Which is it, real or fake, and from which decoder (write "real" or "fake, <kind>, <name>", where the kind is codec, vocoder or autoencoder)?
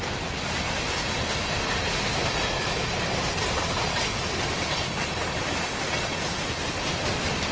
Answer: real